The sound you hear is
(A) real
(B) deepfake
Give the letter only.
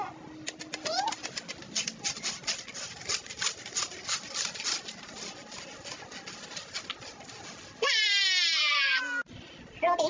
A